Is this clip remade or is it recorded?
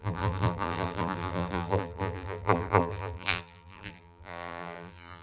remade